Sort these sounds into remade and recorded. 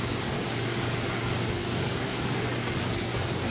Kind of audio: remade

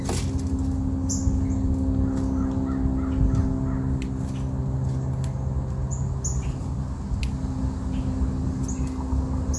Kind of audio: recorded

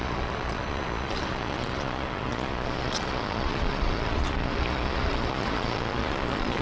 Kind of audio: remade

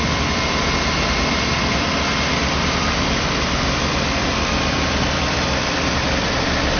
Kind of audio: remade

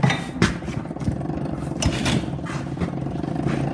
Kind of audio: recorded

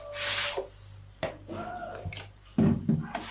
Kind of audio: recorded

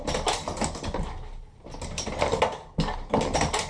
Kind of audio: recorded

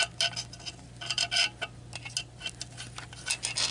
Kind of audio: recorded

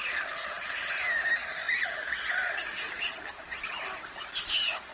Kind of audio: recorded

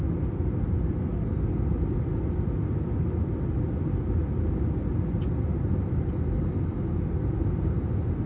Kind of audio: recorded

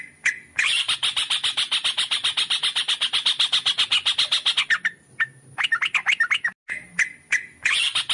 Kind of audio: recorded